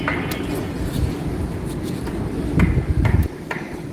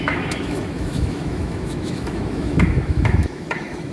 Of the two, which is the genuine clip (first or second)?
first